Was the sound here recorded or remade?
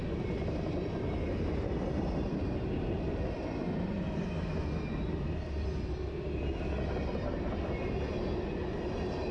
recorded